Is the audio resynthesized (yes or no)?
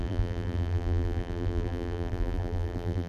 yes